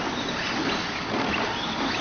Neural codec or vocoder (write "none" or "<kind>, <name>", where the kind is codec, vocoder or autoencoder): none